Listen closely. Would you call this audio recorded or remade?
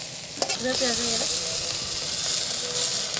recorded